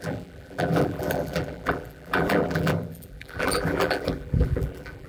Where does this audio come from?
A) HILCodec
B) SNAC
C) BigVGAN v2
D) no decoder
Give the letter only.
C